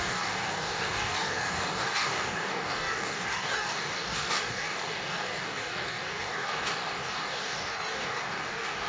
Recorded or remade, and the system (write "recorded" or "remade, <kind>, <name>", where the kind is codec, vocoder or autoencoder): remade, codec, DAC